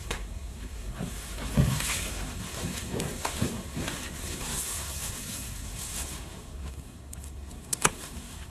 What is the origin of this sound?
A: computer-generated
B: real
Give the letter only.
A